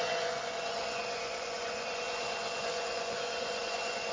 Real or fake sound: fake